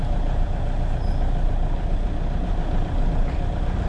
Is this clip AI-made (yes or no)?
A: no